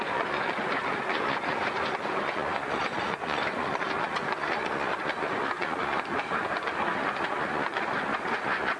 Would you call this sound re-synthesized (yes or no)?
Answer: yes